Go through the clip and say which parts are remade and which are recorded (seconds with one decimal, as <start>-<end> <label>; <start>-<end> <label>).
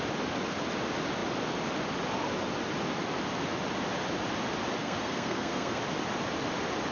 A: 0.0-4.8 recorded; 4.8-5.8 remade; 5.8-6.9 recorded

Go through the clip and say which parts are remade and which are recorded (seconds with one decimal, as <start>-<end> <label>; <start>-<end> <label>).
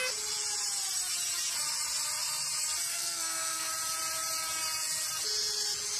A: 0.0-2.9 recorded; 2.9-3.7 remade; 3.7-6.0 recorded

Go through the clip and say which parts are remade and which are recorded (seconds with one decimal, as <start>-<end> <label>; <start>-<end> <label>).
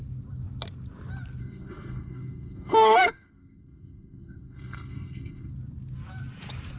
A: 0.0-1.4 recorded; 1.4-5.5 remade; 5.5-6.8 recorded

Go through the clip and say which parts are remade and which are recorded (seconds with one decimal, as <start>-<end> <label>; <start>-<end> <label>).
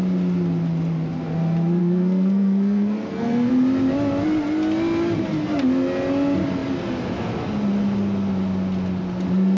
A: 0.0-1.8 recorded; 1.8-3.5 remade; 3.5-9.6 recorded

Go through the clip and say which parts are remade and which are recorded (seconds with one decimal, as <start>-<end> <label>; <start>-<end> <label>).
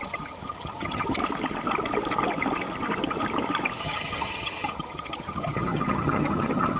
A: 0.0-1.2 remade; 1.2-3.8 recorded; 3.8-6.8 remade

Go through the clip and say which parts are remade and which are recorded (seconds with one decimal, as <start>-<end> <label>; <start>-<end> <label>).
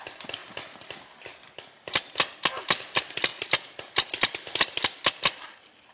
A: 0.0-5.9 recorded